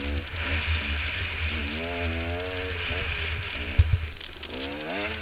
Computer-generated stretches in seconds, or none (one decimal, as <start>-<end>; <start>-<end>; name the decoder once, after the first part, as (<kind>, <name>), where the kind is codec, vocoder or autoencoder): none